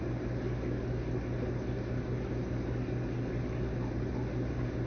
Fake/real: real